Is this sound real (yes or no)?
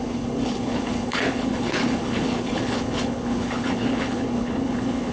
no